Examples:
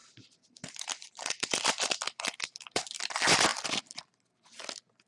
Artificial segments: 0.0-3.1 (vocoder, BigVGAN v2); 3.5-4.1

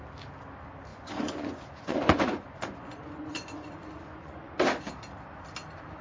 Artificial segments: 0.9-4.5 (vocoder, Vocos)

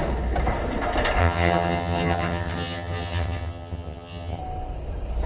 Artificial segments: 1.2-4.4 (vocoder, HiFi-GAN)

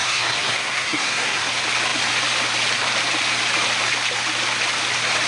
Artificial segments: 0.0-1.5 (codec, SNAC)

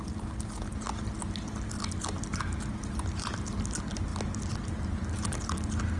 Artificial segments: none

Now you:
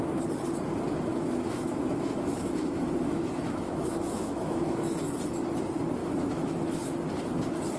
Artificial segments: 1.1-5.0 (autoencoder, DAC-VAE); 6.0-6.8

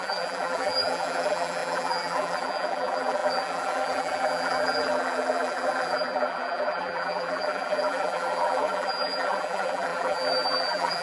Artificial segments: 0.0-11.0 (vocoder, BigVGAN v2)

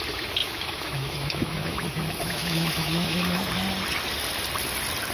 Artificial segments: 0.4-3.5 (autoencoder, DAC-VAE)